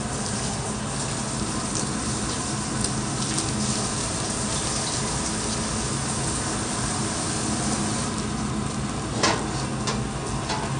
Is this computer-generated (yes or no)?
no